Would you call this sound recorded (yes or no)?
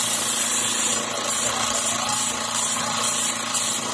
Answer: yes